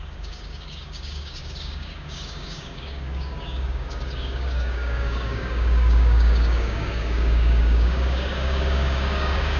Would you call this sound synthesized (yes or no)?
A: yes